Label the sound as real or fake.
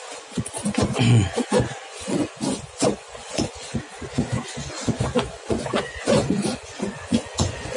fake